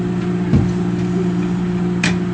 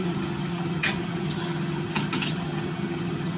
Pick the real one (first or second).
first